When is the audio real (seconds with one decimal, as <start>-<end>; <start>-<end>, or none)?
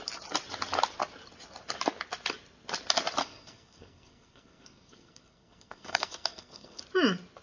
0.0-3.2; 6.8-7.4